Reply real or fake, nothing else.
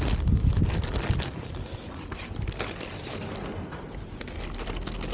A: real